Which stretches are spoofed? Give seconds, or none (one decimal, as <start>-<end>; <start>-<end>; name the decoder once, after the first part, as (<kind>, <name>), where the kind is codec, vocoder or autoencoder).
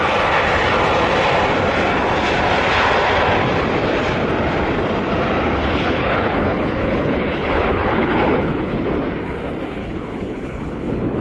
5.6-8.9 (codec, HILCodec); 9.8-11.2